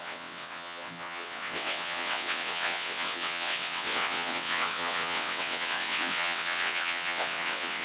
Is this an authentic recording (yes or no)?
no